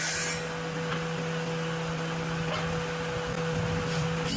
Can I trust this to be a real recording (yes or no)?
yes